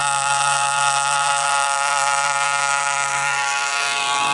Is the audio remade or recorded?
remade